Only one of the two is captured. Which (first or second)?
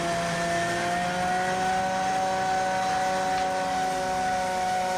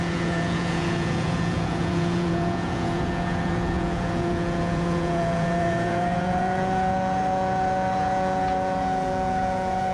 first